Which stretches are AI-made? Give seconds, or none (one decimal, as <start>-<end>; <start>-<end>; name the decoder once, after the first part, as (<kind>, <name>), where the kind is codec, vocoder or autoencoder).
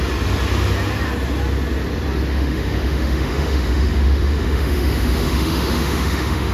2.3-6.5 (autoencoder, DAC-VAE)